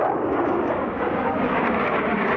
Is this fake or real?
fake